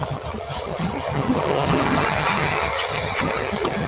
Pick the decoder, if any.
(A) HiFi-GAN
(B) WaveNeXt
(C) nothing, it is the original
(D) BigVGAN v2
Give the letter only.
A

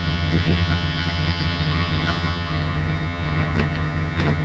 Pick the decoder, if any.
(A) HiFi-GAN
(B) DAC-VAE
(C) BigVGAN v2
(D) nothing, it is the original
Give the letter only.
A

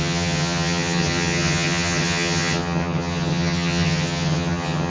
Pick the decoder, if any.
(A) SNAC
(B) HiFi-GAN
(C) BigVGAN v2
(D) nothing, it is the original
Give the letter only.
B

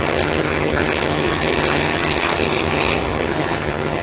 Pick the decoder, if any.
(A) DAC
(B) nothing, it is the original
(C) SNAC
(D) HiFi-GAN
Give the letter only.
D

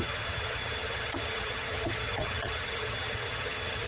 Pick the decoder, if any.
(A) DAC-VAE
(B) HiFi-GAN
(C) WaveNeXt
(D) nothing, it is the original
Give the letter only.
B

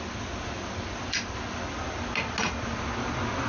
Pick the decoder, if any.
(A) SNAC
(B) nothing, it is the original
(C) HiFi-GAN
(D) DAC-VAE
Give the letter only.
B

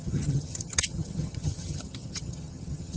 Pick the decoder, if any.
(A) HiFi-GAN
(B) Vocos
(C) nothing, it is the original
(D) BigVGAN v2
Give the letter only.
A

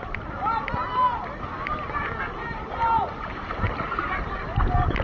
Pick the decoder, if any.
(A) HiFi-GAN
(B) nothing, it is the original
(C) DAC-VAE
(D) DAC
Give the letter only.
B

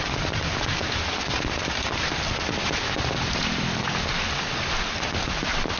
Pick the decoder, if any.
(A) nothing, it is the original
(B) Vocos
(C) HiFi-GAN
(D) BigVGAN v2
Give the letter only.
A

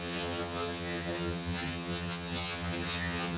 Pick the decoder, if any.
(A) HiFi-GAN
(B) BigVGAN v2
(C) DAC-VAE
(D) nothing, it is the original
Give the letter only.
A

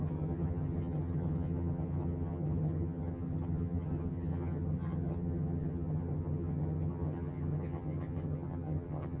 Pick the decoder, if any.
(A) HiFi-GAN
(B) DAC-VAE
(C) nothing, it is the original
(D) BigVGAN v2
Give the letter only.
A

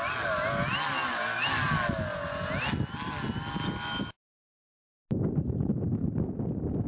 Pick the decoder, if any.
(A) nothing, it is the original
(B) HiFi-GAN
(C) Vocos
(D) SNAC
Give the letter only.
A